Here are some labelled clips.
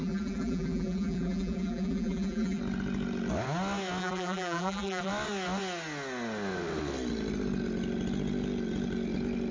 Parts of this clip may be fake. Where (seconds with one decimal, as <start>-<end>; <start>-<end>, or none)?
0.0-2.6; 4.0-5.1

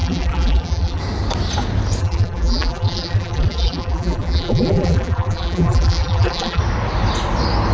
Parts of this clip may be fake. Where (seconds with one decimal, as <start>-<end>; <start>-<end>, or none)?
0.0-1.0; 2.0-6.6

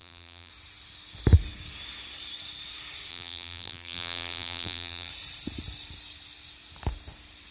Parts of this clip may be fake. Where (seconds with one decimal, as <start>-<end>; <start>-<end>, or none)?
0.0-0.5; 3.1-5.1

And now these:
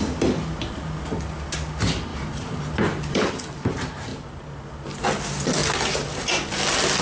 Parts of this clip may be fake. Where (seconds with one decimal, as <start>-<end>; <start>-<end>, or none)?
2.1-3.3; 4.1-4.6

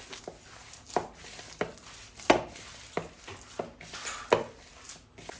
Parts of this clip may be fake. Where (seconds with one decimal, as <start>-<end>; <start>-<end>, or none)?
none

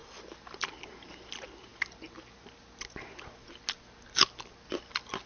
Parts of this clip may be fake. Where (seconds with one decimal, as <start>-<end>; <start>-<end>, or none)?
0.0-0.8

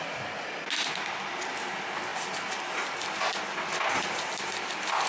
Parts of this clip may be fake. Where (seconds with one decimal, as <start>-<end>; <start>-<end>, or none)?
none

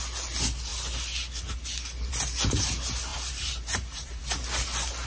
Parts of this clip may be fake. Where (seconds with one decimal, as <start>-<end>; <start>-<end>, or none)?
3.1-4.2